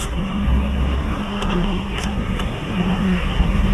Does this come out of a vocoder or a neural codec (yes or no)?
yes